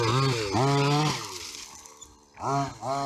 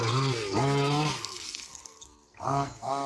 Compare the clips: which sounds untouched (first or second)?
first